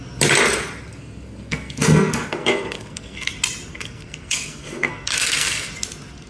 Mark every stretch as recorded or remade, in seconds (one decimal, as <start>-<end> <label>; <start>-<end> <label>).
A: 0.0-0.9 recorded; 0.9-3.3 remade; 3.3-3.7 recorded; 3.7-5.7 remade; 5.7-6.3 recorded